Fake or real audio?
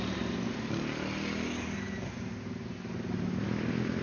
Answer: real